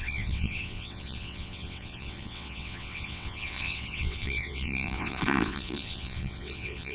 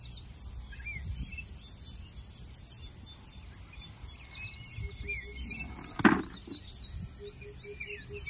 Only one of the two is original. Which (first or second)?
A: second